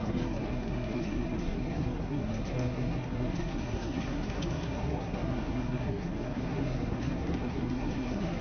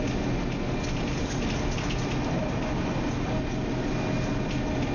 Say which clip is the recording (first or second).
second